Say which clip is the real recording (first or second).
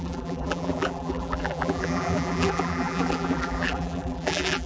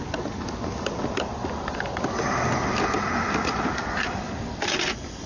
second